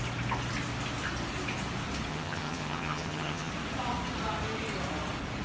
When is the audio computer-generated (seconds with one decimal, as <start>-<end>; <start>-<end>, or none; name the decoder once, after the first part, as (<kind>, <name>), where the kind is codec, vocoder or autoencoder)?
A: 2.1-3.5 (vocoder, HiFi-GAN)